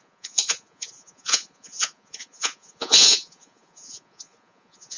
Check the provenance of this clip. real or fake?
fake